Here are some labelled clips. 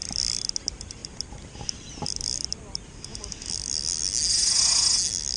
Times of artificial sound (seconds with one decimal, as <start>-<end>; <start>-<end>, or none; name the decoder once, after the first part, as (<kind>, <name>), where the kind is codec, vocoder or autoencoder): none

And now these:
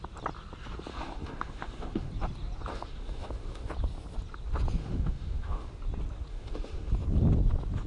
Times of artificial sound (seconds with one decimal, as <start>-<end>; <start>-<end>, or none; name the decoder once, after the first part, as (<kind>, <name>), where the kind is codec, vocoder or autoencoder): 0.9-2.1 (autoencoder, DAC-VAE); 2.7-3.7; 4.8-5.7; 6.3-6.9

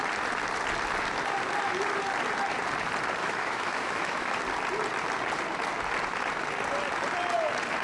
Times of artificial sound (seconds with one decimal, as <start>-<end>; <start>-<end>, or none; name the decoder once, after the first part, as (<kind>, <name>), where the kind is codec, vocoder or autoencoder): 3.2-4.3 (autoencoder, DAC-VAE)